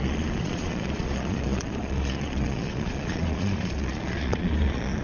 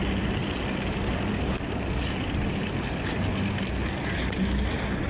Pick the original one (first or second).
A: second